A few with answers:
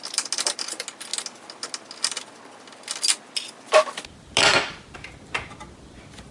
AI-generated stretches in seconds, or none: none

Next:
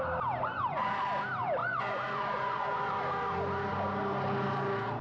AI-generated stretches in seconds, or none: 0.4-1.0 (vocoder, Vocos); 1.6-3.0

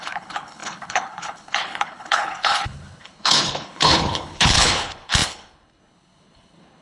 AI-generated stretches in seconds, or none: 0.0-6.8 (codec, HILCodec)

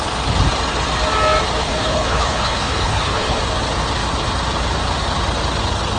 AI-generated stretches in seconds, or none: 1.6-3.4 (codec, HILCodec)